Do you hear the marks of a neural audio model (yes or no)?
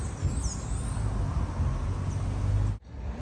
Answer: no